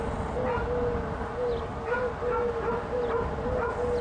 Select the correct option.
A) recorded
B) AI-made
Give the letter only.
A